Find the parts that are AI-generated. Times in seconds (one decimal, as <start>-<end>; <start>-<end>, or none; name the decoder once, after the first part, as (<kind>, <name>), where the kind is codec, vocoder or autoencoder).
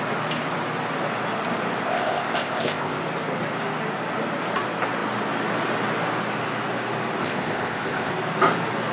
1.8-3.0 (codec, ZipCodec); 7.2-8.1